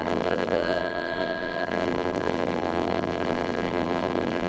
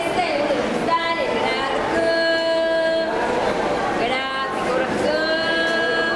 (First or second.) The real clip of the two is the second